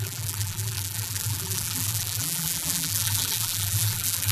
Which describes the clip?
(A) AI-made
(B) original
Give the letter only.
A